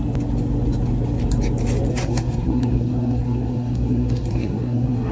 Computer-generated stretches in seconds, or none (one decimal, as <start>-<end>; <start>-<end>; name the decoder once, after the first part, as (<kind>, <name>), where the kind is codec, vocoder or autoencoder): 1.9-5.1 (codec, SNAC)